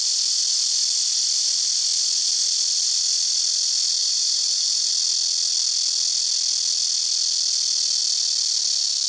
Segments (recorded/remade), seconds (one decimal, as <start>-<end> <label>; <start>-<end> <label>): 0.0-4.0 recorded; 4.0-4.9 remade; 4.9-9.1 recorded